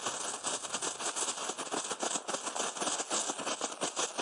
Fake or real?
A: real